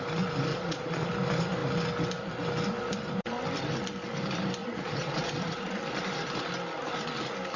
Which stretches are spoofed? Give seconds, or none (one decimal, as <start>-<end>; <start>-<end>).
0.5-1.1; 4.6-5.8